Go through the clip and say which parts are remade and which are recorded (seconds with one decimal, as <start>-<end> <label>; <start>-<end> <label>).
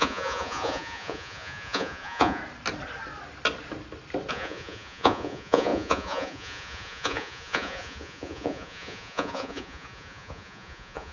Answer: 0.0-2.4 remade; 2.4-4.3 recorded; 4.3-11.1 remade